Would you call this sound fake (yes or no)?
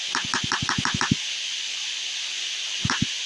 no